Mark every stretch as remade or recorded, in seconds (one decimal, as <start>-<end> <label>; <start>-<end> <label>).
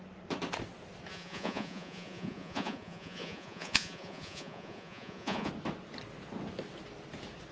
0.0-1.1 recorded; 1.1-5.5 remade; 5.5-7.5 recorded